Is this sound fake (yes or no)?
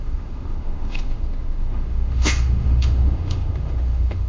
yes